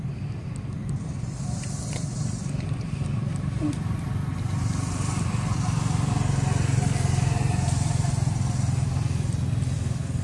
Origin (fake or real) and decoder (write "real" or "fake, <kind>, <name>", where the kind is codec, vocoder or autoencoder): real